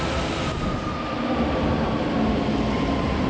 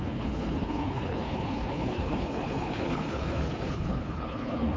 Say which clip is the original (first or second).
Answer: first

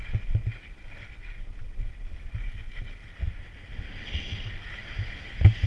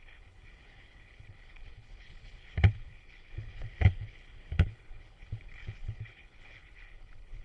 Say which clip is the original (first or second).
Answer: first